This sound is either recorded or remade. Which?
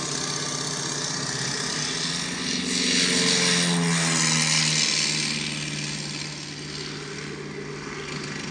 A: recorded